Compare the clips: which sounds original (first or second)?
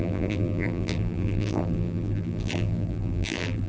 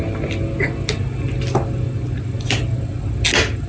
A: second